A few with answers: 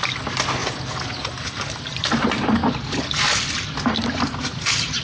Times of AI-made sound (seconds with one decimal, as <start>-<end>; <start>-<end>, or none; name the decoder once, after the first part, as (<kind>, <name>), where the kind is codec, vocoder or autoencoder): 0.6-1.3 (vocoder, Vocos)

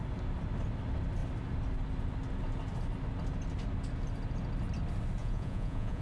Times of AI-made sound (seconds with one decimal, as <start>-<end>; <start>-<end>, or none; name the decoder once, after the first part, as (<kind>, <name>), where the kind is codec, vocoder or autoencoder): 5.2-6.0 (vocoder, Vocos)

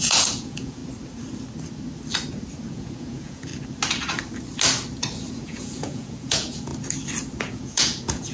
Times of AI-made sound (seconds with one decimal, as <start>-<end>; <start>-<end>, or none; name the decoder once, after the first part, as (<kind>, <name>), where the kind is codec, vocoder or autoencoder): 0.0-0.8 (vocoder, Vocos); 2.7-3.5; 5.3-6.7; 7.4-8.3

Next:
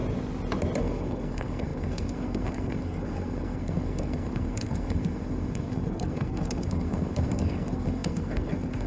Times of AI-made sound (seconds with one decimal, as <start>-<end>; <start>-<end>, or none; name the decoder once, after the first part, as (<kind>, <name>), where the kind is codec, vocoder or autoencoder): 0.8-8.9 (codec, SNAC)